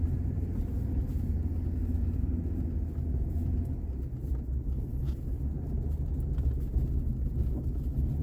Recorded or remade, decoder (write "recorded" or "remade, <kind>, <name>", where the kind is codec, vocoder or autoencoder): recorded